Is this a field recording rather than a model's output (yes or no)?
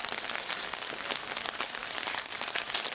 yes